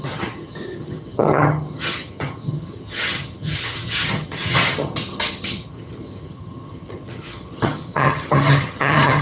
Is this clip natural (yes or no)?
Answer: no